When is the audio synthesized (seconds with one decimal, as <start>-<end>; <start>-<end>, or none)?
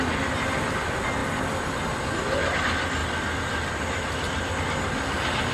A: none